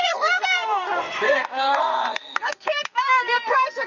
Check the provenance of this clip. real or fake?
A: fake